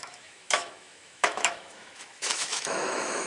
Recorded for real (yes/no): no